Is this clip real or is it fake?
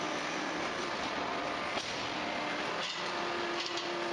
real